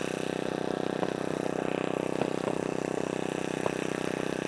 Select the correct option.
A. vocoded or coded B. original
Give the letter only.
B